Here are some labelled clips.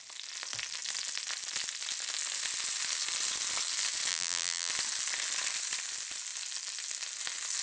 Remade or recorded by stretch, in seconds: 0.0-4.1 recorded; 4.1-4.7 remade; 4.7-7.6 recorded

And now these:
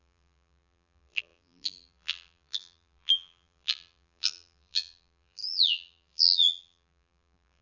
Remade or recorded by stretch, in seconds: 0.0-7.6 remade

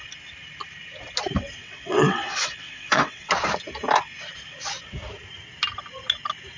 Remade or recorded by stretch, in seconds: 0.0-1.6 recorded; 1.6-3.3 remade; 3.3-6.6 recorded

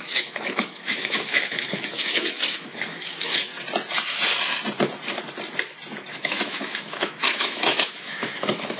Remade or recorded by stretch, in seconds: 0.0-3.5 remade; 3.5-6.1 recorded; 6.1-8.8 remade

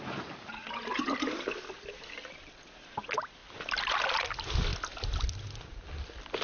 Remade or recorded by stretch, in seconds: 0.0-6.4 recorded

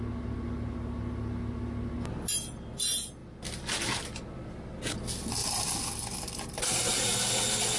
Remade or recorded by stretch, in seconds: 0.0-7.8 recorded